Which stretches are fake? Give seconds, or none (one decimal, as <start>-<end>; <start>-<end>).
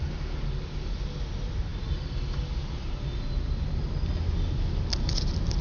none